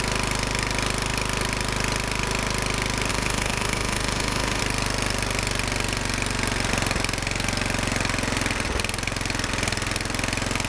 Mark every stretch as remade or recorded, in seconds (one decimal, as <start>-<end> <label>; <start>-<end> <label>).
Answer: 0.0-3.1 recorded; 3.1-4.6 remade; 4.6-10.7 recorded